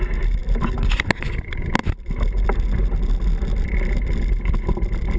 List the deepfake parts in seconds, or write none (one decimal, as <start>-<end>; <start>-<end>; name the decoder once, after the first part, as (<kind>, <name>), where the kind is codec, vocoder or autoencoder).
0.4-1.1 (vocoder, BigVGAN v2); 1.8-5.2